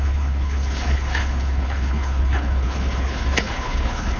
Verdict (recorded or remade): remade